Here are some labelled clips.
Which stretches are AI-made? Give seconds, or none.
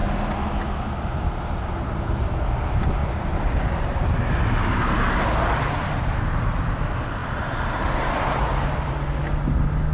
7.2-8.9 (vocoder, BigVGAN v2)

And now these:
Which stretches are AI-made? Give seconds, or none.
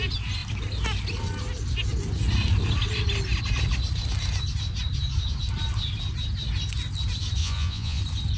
7.4-8.0 (vocoder, Vocos)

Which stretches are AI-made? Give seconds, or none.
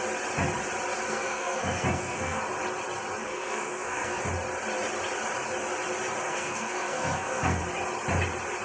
1.1-2.4 (codec, SNAC); 3.2-4.2; 6.2-7.6